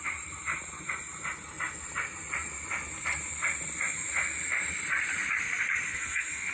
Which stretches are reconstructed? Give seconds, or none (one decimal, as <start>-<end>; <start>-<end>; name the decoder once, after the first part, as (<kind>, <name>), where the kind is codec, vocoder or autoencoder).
5.9-6.5 (codec, SNAC)